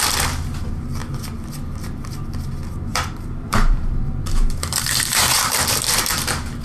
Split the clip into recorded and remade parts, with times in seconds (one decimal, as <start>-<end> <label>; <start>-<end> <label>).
0.0-2.9 recorded; 2.9-6.6 remade

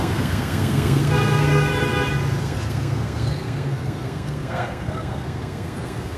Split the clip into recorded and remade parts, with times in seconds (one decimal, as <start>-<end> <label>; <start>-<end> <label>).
0.0-1.7 remade; 1.7-2.4 recorded; 2.4-6.2 remade

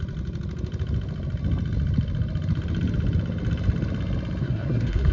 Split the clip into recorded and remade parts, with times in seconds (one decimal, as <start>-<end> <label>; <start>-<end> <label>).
0.0-4.4 recorded; 4.4-5.1 remade